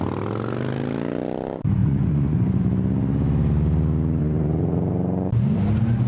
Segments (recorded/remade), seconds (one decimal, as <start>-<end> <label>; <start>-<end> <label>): 0.0-1.8 recorded; 1.8-2.6 remade; 2.6-4.2 recorded; 4.2-5.3 remade; 5.3-6.1 recorded